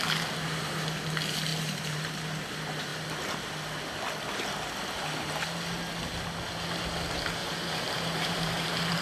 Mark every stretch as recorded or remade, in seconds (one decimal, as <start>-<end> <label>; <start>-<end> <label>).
0.0-1.5 recorded; 1.5-2.2 remade; 2.2-7.4 recorded; 7.4-9.0 remade